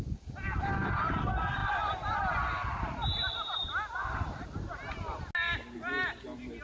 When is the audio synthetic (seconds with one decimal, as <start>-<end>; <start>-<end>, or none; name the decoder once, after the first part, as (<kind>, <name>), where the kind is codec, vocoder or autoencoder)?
none